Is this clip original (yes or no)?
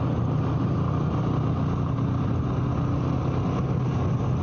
yes